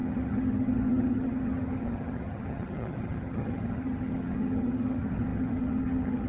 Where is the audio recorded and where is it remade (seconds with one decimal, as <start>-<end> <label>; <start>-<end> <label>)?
0.0-6.3 remade